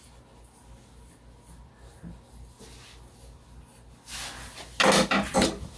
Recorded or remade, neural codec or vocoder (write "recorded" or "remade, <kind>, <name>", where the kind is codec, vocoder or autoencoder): recorded